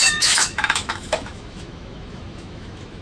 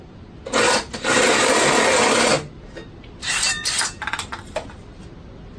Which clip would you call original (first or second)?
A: second